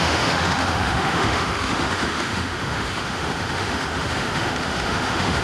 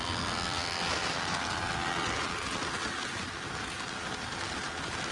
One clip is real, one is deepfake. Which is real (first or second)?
second